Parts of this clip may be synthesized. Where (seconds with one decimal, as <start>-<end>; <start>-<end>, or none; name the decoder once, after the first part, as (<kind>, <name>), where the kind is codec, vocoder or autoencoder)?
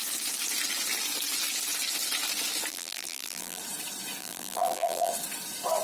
2.7-3.6 (vocoder, BigVGAN v2); 4.2-5.1